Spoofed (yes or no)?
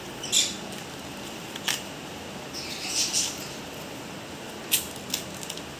no